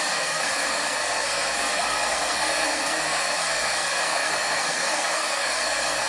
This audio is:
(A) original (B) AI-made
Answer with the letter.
B